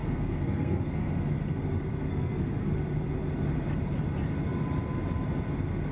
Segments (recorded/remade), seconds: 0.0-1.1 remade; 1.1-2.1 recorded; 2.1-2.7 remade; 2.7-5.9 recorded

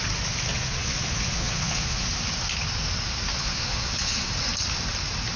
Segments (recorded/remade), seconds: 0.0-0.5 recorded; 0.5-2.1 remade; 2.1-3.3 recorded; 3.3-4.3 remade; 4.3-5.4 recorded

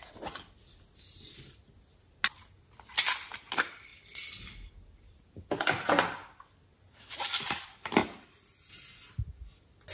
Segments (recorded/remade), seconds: 0.0-9.9 recorded

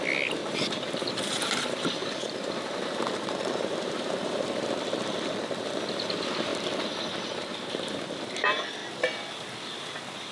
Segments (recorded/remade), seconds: 0.0-0.4 recorded; 0.4-4.7 remade; 4.7-6.5 recorded; 6.5-7.9 remade; 7.9-10.3 recorded

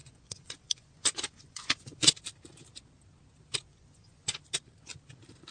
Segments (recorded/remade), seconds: 0.0-2.2 remade; 2.2-3.7 recorded; 3.7-4.4 remade; 4.4-5.5 recorded

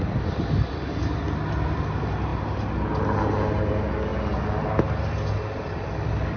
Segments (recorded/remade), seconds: 0.0-6.4 recorded

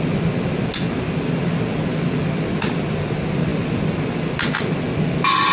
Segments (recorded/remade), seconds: 0.0-5.5 recorded